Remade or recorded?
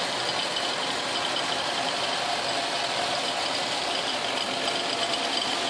recorded